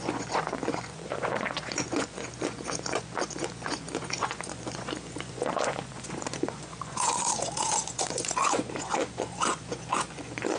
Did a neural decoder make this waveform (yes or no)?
yes